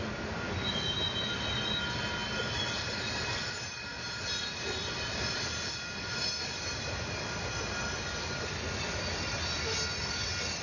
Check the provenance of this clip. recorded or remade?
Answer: recorded